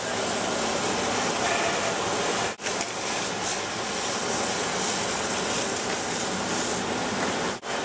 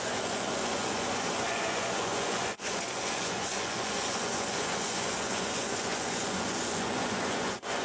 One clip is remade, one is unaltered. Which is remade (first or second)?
second